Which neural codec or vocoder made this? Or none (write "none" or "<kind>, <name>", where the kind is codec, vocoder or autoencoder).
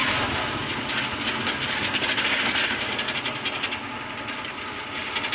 none